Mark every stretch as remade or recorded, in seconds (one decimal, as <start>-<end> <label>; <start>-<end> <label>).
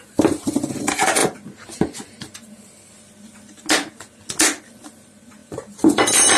0.0-1.2 remade; 1.2-5.0 recorded; 5.0-6.4 remade